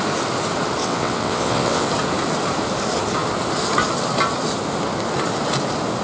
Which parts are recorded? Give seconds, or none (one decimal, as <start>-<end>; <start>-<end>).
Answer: 0.0-0.8; 1.9-6.0